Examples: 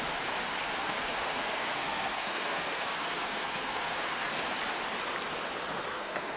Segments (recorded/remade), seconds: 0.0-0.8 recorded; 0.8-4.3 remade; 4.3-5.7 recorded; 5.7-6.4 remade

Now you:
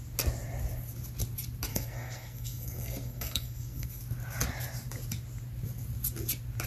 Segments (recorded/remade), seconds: 0.0-1.7 recorded; 1.7-4.0 remade; 4.0-6.7 recorded

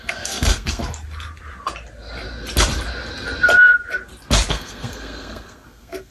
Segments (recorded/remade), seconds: 0.0-0.8 remade; 0.8-4.5 recorded; 4.5-6.1 remade

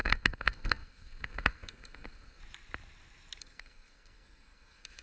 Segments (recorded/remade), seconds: 0.0-2.4 remade; 2.4-3.4 recorded; 3.4-5.0 remade

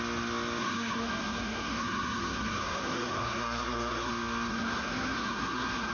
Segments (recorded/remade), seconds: 0.0-0.6 recorded; 0.6-4.1 remade; 4.1-4.5 recorded; 4.5-5.9 remade

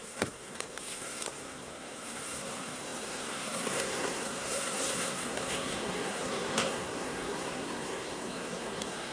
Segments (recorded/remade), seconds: 0.0-9.1 remade

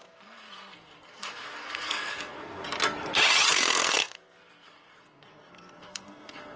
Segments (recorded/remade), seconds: 0.0-2.6 remade; 2.6-3.5 recorded; 3.5-6.6 remade

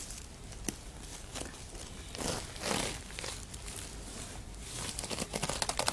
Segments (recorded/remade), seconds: 0.0-5.9 recorded